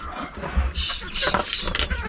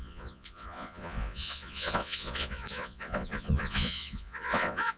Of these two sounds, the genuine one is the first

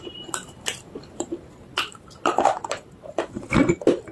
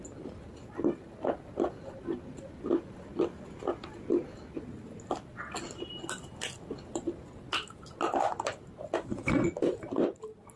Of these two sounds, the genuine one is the second